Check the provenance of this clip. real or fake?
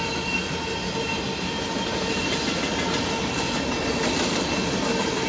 real